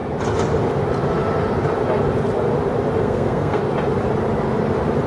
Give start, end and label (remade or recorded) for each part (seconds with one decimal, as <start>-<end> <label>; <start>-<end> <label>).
0.0-3.0 recorded; 3.0-3.6 remade; 3.6-5.1 recorded